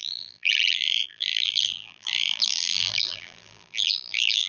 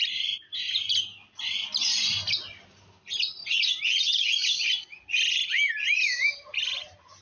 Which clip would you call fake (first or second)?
first